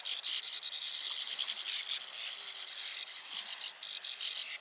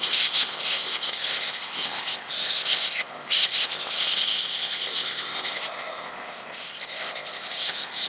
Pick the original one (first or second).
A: first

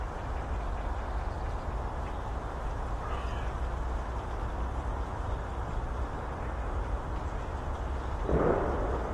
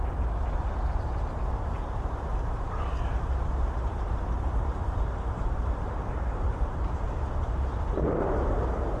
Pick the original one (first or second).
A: first